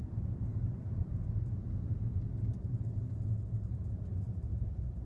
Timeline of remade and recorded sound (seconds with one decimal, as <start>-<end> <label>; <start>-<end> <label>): 0.0-5.0 recorded